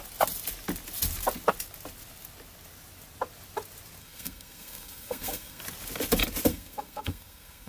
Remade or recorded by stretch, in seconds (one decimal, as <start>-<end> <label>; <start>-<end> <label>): 0.0-4.0 recorded; 4.0-5.6 remade; 5.6-6.5 recorded; 6.5-7.7 remade